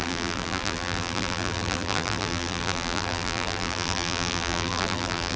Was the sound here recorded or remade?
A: remade